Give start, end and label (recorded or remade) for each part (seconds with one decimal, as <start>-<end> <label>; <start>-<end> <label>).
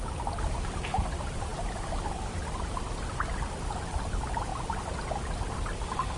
0.0-6.2 recorded